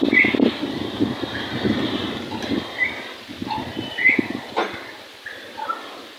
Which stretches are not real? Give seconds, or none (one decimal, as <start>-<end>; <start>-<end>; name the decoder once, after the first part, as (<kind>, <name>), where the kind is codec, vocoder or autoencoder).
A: 3.4-4.5 (vocoder, BigVGAN v2)